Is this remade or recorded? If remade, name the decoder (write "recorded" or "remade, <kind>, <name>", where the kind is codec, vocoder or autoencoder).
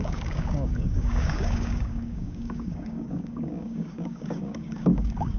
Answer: remade, codec, DAC